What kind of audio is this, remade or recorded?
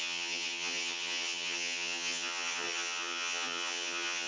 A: remade